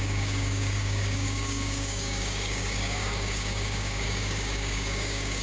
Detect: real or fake fake